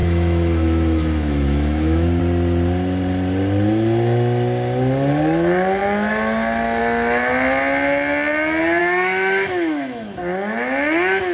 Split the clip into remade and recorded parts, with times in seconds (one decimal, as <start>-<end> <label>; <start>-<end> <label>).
0.0-2.2 remade; 2.2-8.8 recorded; 8.8-10.2 remade; 10.2-11.3 recorded